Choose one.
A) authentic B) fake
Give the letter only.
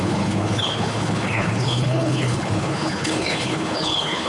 B